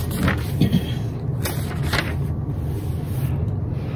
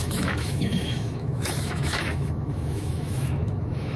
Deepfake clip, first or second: second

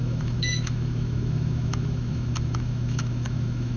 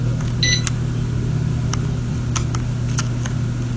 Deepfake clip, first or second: first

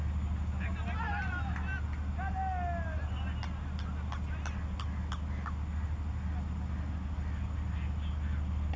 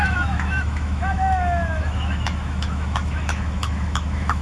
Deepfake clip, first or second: second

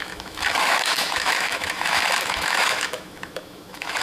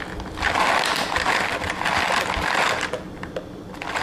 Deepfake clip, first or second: first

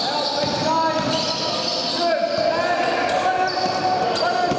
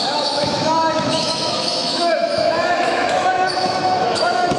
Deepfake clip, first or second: second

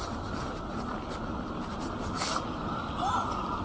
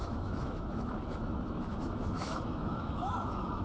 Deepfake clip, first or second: second